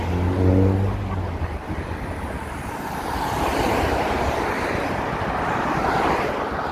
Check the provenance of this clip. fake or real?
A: real